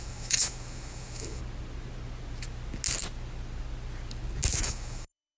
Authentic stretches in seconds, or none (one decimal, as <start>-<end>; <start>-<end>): 1.4-4.6